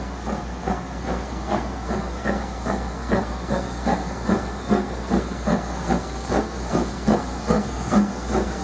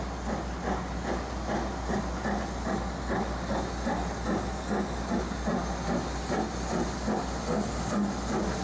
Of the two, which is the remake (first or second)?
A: first